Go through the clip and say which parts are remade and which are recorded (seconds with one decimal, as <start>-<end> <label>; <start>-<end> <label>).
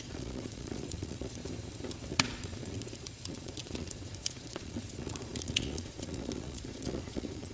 0.0-1.4 remade; 1.4-2.1 recorded; 2.1-7.5 remade